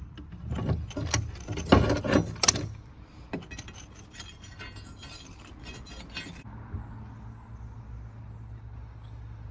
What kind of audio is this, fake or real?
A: real